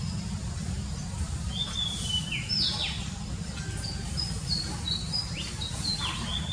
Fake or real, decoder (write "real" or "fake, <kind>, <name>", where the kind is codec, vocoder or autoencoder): real